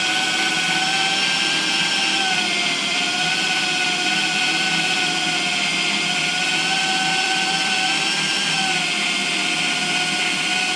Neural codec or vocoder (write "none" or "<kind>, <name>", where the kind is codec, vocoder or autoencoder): vocoder, BigVGAN v2